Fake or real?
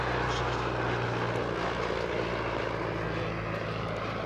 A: real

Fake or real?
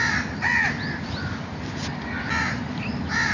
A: real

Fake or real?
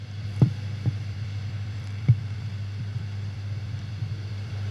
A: fake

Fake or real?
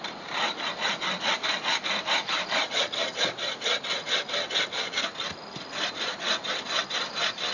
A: real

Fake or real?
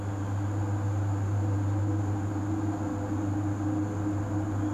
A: real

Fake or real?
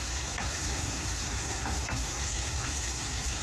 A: fake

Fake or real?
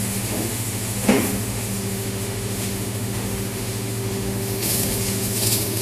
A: fake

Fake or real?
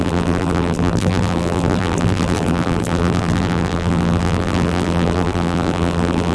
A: fake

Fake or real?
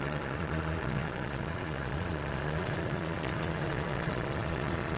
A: fake